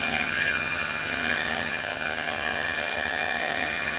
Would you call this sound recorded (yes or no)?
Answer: no